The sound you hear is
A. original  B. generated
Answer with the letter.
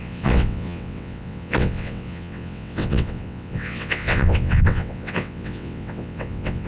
B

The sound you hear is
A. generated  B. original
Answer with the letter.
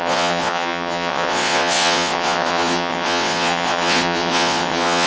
A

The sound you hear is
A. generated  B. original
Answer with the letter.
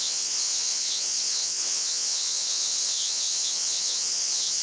A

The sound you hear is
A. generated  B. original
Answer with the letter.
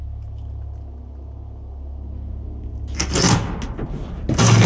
B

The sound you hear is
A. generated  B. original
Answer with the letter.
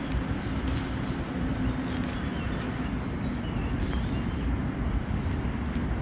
B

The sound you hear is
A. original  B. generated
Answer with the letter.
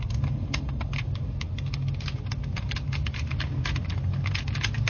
A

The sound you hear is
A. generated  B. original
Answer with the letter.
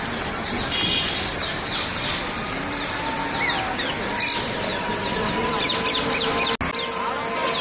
B